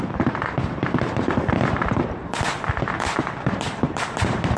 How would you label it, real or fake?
fake